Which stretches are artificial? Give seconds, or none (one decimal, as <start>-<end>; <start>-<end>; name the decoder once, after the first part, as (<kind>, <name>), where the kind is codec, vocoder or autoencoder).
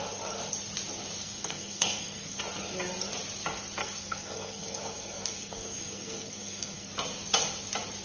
1.2-2.4 (codec, SNAC); 3.8-6.9